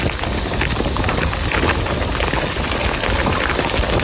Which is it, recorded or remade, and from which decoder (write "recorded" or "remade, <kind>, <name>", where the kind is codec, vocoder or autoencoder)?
recorded